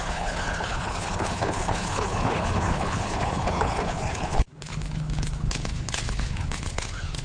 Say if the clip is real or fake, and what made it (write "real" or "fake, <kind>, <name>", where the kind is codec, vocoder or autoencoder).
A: fake, codec, HILCodec